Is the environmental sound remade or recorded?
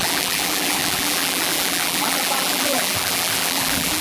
remade